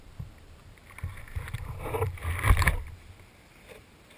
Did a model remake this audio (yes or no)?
yes